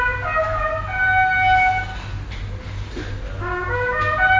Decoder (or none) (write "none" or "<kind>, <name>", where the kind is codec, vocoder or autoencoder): none